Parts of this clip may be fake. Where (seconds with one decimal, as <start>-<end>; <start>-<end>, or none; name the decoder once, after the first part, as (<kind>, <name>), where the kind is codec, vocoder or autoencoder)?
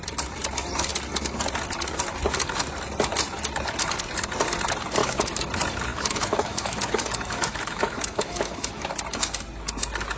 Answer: 5.0-5.5 (autoencoder, DAC-VAE); 5.9-8.9